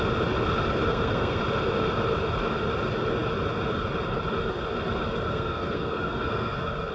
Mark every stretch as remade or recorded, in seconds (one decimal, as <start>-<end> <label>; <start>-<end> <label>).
0.0-0.9 recorded; 0.9-1.4 remade; 1.4-5.3 recorded; 5.3-6.9 remade